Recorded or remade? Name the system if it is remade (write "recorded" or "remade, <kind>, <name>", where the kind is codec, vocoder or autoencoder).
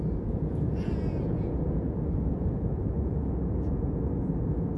remade, vocoder, Vocos